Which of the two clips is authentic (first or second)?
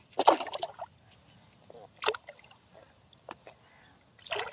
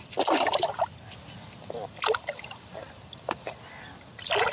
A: first